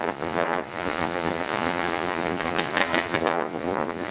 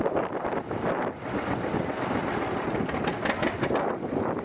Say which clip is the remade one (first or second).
first